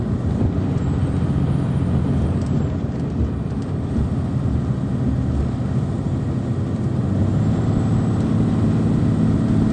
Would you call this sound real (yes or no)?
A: yes